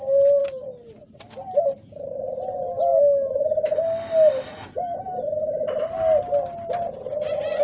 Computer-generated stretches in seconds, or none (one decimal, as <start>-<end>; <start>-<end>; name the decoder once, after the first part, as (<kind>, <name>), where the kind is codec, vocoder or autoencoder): 0.4-1.3 (vocoder, BigVGAN v2)